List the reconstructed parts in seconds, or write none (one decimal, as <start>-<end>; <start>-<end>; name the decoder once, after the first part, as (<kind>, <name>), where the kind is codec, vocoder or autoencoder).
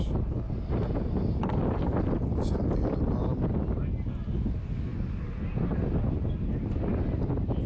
2.3-3.1 (vocoder, BigVGAN v2)